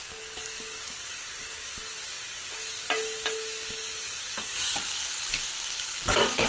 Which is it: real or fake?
fake